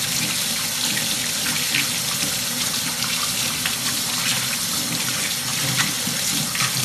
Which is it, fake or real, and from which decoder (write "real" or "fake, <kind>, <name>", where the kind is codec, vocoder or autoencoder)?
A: real